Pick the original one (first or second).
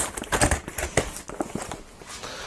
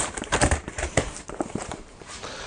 first